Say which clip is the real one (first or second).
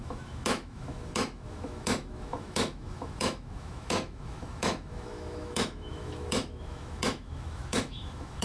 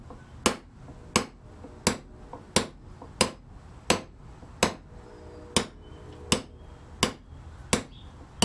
second